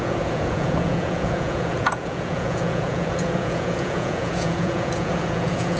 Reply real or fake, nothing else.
fake